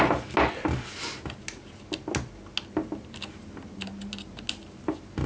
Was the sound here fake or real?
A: real